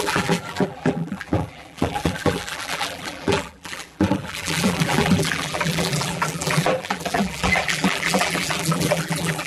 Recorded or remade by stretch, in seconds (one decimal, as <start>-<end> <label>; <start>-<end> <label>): 0.0-9.5 remade